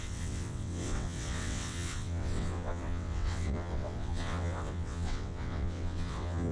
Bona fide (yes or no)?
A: no